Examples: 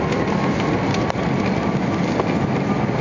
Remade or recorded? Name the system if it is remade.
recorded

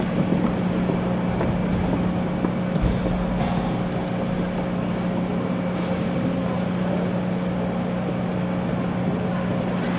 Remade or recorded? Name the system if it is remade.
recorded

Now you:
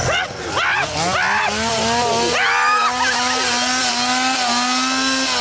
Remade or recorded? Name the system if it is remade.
recorded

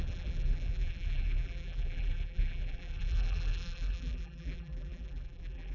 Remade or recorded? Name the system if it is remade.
remade, vocoder, BigVGAN v2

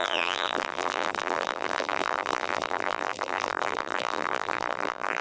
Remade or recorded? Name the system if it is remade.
remade, vocoder, BigVGAN v2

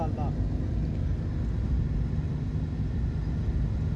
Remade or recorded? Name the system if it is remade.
recorded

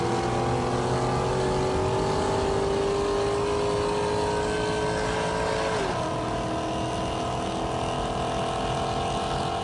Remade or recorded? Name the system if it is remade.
recorded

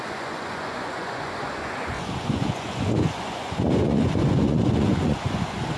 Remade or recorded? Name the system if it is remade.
remade, vocoder, Vocos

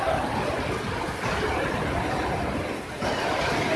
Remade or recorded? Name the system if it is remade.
recorded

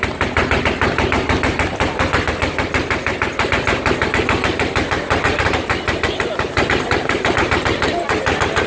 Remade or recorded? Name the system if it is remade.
recorded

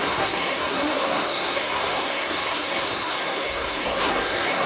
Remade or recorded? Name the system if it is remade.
remade, codec, SNAC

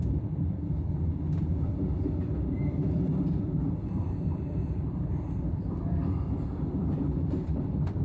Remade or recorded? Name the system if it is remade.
remade, vocoder, BigVGAN v2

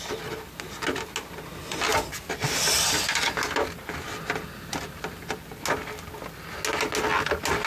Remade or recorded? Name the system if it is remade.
recorded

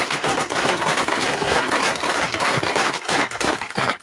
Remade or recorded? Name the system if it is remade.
remade, codec, SNAC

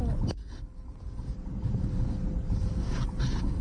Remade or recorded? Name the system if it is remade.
remade, vocoder, BigVGAN v2